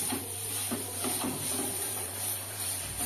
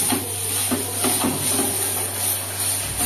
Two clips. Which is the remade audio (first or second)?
first